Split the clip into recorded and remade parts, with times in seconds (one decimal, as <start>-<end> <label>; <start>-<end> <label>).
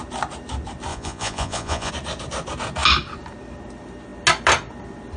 0.0-0.9 recorded; 0.9-1.9 remade; 1.9-5.2 recorded